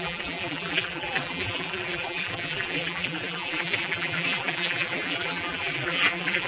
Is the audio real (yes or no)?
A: no